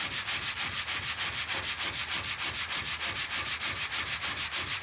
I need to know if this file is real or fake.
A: real